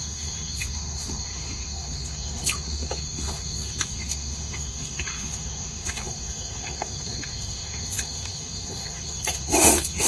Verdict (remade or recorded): remade